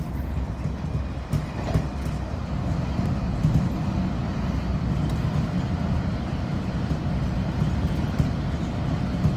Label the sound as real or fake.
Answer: real